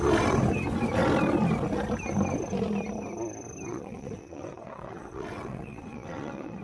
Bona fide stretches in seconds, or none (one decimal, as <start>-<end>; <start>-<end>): 0.0-3.7